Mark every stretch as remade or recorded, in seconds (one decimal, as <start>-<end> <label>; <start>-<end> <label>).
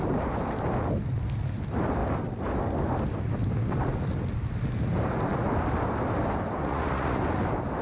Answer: 0.0-6.6 recorded; 6.6-7.2 remade; 7.2-7.8 recorded